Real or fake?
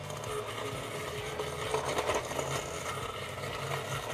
real